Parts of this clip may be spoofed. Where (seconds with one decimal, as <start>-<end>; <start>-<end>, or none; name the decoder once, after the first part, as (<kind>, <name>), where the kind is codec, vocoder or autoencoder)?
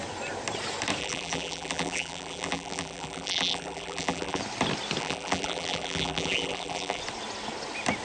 1.0-4.4 (vocoder, BigVGAN v2); 5.0-7.0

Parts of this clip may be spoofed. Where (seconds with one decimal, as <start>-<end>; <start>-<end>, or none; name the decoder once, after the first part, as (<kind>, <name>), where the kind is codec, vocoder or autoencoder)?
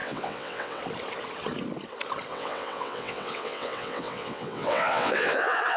0.0-0.8 (vocoder, WaveNeXt); 2.3-5.8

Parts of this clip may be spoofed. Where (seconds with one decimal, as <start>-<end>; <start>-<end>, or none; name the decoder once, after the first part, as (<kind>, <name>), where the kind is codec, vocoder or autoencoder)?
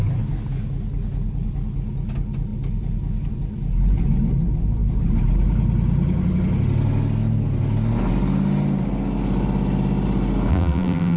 10.5-11.2 (vocoder, BigVGAN v2)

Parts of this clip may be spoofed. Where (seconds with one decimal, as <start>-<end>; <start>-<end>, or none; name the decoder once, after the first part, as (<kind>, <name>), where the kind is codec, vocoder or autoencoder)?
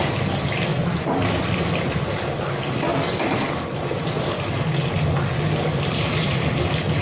none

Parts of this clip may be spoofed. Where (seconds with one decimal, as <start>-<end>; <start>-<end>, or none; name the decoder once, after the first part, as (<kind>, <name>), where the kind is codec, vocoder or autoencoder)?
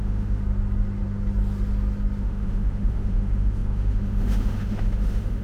0.0-0.4 (autoencoder, DAC-VAE); 2.2-5.4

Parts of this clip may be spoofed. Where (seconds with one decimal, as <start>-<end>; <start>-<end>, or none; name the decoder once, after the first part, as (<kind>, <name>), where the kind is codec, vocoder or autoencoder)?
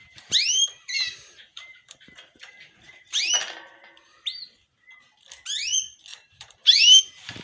0.0-3.2 (vocoder, BigVGAN v2); 6.1-7.4